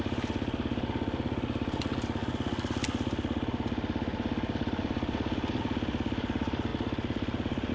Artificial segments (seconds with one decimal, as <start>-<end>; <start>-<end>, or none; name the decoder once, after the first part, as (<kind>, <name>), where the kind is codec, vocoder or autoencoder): none

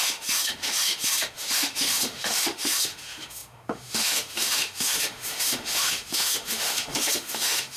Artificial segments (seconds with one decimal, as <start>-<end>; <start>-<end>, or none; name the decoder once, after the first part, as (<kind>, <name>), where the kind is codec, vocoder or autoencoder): 0.0-7.8 (autoencoder, DAC-VAE)

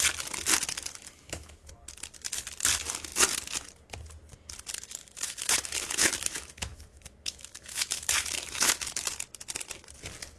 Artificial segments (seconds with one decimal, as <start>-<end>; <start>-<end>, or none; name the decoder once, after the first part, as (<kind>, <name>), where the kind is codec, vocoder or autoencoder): 1.0-1.7 (autoencoder, DAC-VAE); 5.0-9.1

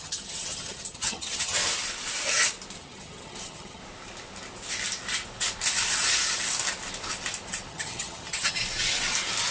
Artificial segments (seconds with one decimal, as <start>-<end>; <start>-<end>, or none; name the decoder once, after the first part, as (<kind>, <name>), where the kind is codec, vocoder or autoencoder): 0.0-1.6 (vocoder, HiFi-GAN); 2.8-3.8; 7.7-8.6

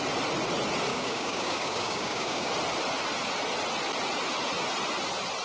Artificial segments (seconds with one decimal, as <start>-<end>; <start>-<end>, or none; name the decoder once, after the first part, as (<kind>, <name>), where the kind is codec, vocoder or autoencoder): 0.9-2.5 (codec, DAC)

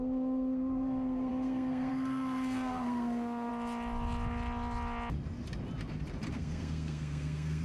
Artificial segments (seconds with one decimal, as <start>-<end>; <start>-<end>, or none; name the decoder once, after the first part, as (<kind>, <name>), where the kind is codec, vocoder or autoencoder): 0.0-3.5 (codec, SNAC); 6.3-7.6